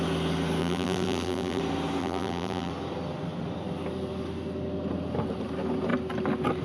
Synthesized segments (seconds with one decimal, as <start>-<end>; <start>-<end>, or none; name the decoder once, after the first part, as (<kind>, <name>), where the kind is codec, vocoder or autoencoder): 0.6-1.6 (vocoder, BigVGAN v2); 2.0-2.7